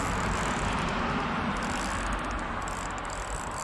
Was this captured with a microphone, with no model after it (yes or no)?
yes